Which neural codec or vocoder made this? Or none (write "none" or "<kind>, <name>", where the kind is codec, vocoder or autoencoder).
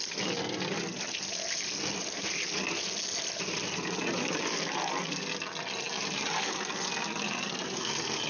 none